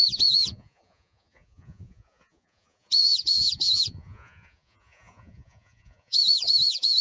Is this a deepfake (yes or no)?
yes